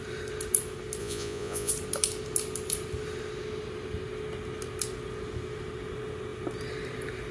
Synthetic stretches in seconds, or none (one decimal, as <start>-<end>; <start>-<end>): 1.0-1.7